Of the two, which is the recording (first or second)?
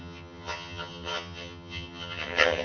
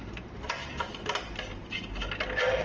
second